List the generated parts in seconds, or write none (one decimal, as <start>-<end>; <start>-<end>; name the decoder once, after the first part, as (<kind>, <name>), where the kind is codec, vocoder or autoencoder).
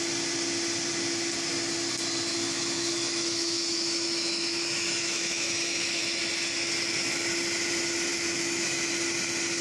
2.3-6.2 (autoencoder, DAC-VAE); 8.1-8.9